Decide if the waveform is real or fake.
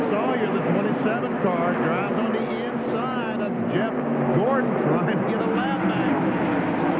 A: real